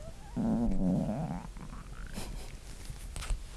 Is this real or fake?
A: real